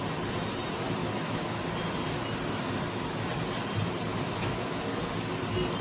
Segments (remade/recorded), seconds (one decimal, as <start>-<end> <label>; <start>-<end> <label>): 0.0-1.0 recorded; 1.0-1.6 remade; 1.6-4.1 recorded; 4.1-4.8 remade; 4.8-5.8 recorded